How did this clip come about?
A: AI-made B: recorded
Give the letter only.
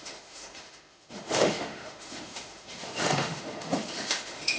A